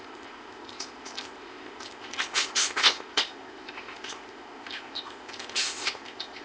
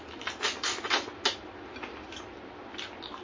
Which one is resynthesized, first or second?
first